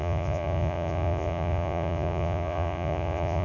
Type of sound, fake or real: fake